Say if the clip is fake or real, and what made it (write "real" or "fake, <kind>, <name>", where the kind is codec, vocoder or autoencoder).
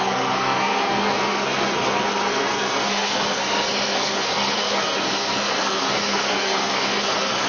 fake, codec, SNAC